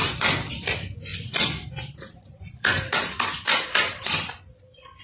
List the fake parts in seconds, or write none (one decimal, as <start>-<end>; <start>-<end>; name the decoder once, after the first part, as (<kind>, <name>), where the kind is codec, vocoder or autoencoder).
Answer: 0.5-1.1 (vocoder, BigVGAN v2); 2.1-5.0